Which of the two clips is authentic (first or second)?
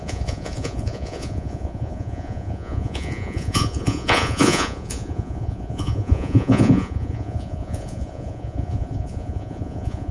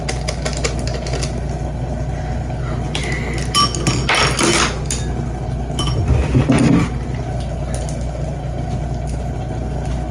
second